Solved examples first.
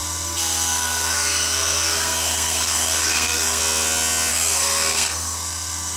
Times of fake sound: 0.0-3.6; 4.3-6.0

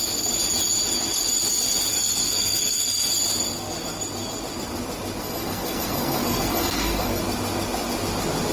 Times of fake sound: 1.9-3.1; 5.2-7.2

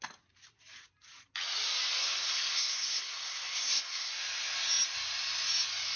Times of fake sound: 2.0-4.1

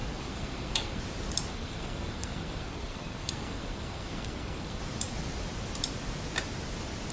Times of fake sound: 0.0-1.0; 1.5-4.8